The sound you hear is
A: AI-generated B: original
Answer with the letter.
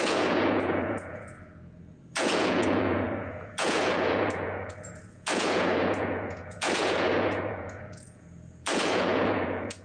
A